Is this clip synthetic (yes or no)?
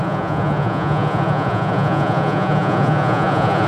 yes